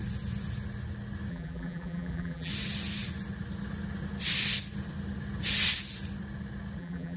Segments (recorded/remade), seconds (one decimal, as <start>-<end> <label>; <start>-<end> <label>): 0.0-1.3 recorded; 1.3-2.5 remade; 2.5-6.8 recorded; 6.8-7.2 remade